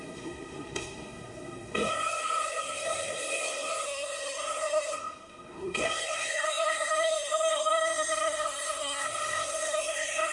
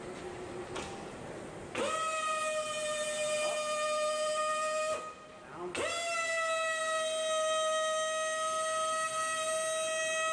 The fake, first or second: first